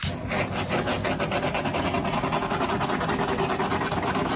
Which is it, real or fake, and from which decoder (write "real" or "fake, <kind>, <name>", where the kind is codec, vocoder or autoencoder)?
real